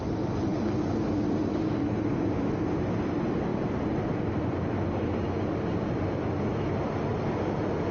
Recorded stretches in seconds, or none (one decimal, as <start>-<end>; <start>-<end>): 0.0-7.9